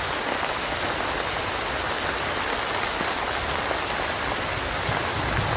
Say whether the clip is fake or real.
real